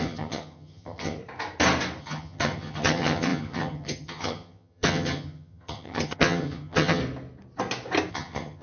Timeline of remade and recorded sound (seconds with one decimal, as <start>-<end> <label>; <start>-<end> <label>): 0.0-1.2 remade; 1.2-2.0 recorded; 2.0-7.0 remade; 7.0-8.1 recorded; 8.1-8.6 remade